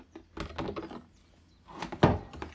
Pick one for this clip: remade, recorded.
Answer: recorded